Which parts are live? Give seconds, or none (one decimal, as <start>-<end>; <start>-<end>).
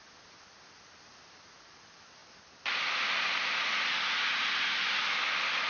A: 0.0-5.7